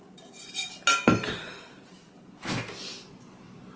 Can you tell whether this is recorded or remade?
recorded